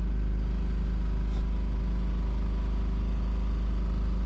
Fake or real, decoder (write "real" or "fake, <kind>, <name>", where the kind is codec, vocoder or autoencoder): real